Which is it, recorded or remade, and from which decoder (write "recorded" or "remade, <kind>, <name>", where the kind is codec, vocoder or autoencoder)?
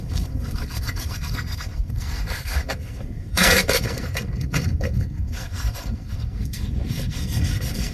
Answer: remade, codec, SNAC